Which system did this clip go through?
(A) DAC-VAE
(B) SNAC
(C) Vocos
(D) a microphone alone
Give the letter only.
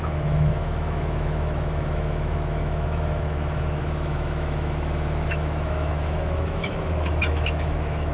A